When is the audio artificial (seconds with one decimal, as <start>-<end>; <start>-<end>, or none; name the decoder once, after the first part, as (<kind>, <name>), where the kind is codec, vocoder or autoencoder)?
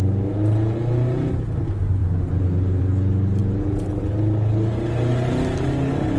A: none